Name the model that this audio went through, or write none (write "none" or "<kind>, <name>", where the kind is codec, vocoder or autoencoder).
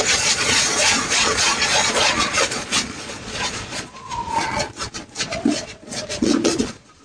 vocoder, Vocos